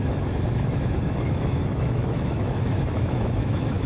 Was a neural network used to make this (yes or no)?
yes